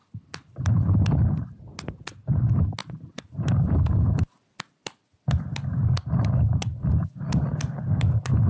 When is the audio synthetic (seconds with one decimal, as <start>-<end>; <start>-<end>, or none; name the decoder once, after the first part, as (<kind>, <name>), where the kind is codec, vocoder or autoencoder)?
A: 0.0-0.7 (vocoder, BigVGAN v2); 2.8-6.9